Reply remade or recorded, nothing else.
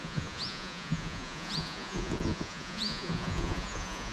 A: remade